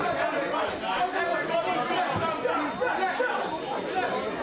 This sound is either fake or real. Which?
real